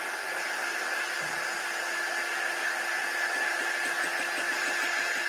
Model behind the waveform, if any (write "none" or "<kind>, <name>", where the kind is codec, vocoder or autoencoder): none